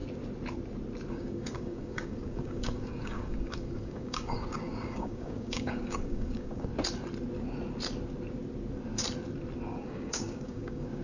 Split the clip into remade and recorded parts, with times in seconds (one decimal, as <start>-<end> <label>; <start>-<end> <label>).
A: 0.0-1.1 recorded; 1.1-6.7 remade; 6.7-9.7 recorded; 9.7-11.0 remade